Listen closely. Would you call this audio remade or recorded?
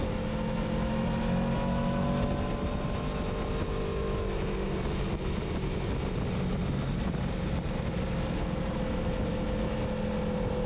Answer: recorded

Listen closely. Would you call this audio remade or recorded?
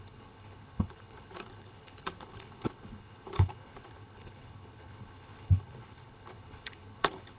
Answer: remade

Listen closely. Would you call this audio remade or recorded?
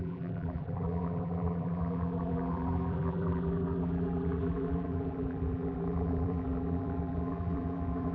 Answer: remade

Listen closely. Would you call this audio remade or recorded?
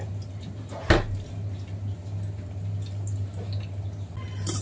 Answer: recorded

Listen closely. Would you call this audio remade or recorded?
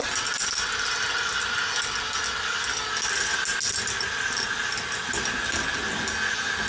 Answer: recorded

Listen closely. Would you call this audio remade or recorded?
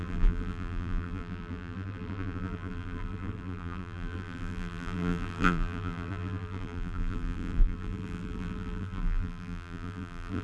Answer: remade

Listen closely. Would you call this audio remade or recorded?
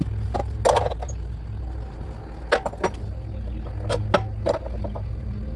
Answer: recorded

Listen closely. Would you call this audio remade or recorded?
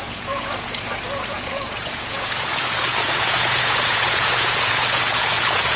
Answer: remade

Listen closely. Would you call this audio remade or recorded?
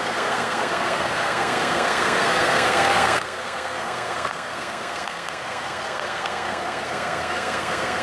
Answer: remade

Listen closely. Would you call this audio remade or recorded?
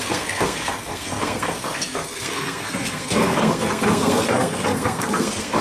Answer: remade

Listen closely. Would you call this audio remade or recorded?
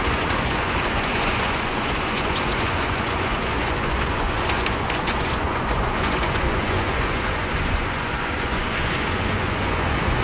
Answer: remade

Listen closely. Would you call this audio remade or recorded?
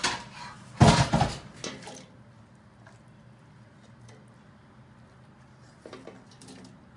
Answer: recorded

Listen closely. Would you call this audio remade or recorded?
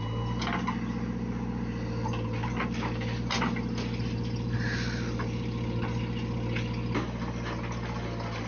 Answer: recorded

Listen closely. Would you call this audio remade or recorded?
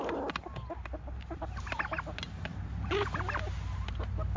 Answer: recorded